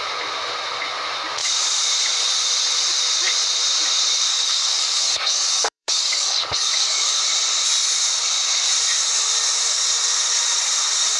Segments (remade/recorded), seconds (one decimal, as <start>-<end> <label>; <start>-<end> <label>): 0.0-4.3 recorded; 4.3-7.2 remade; 7.2-11.2 recorded

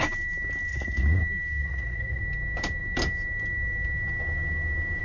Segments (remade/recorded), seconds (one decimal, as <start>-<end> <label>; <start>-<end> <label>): 0.0-0.7 recorded; 0.7-1.2 remade; 1.2-1.6 recorded; 1.6-2.2 remade; 2.2-5.0 recorded

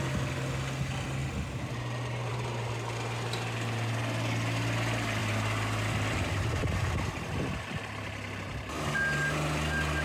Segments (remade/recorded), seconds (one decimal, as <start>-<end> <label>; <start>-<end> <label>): 0.0-5.2 recorded; 5.2-7.1 remade; 7.1-10.0 recorded

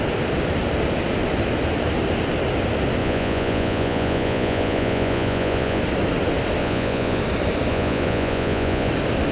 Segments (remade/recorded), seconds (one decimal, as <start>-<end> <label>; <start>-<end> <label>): 0.0-3.0 recorded; 3.0-5.8 remade; 5.8-6.6 recorded; 6.6-7.2 remade; 7.2-7.7 recorded; 7.7-8.9 remade; 8.9-9.3 recorded

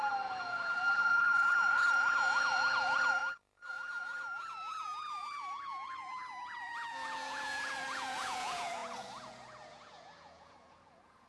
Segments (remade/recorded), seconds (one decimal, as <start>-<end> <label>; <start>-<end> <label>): 0.0-11.3 remade

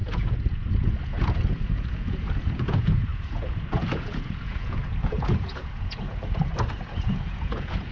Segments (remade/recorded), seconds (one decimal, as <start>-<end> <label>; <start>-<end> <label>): 0.0-7.9 remade

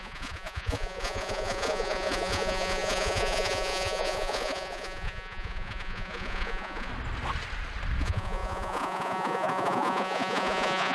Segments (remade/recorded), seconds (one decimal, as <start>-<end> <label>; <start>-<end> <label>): 0.0-6.9 remade; 6.9-8.0 recorded; 8.0-10.9 remade